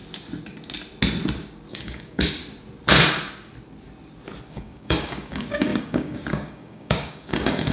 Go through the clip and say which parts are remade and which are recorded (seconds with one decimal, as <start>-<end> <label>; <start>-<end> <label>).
0.0-1.7 recorded; 1.7-2.4 remade; 2.4-4.5 recorded; 4.5-7.7 remade